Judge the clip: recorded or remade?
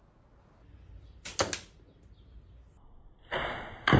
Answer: recorded